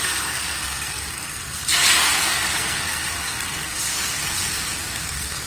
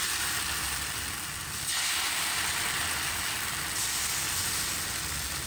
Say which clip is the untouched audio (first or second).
second